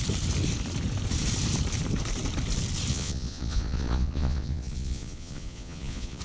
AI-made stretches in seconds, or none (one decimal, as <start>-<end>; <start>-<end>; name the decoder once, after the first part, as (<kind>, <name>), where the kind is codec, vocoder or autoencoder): 2.9-6.2 (vocoder, Vocos)